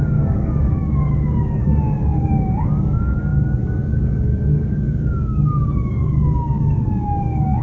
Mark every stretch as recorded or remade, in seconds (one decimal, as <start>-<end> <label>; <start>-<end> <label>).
0.0-7.6 remade

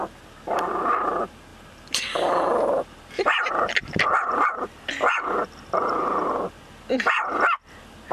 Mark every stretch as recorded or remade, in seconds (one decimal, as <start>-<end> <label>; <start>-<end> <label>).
0.0-8.1 recorded

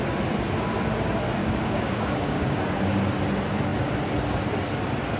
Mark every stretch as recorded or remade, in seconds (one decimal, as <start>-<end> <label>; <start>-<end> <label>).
0.0-1.4 recorded; 1.4-2.6 remade; 2.6-5.2 recorded